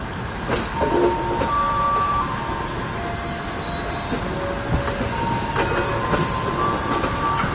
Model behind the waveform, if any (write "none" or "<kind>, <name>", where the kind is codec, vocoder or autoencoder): none